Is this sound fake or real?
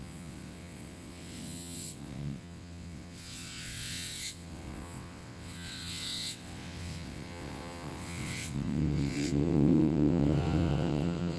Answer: fake